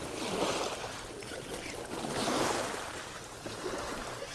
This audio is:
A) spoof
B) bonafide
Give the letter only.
B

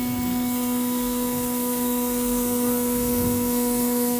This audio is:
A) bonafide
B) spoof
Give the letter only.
B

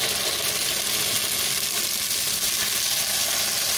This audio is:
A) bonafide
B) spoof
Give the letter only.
A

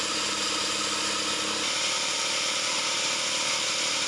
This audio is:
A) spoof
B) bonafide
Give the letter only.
B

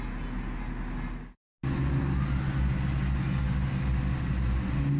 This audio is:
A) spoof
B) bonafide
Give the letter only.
B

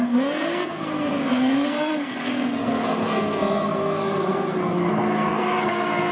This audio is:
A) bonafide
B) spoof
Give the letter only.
B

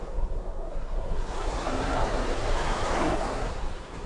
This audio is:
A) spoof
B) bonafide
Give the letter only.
A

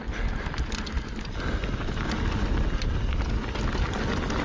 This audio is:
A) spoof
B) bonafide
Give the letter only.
B